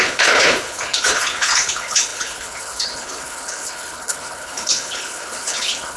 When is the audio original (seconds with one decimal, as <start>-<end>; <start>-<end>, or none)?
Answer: none